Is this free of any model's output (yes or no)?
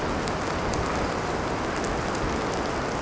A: yes